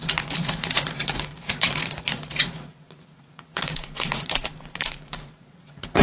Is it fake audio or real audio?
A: fake